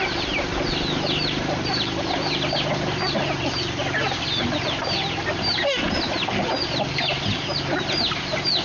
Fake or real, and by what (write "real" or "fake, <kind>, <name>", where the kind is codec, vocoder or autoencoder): real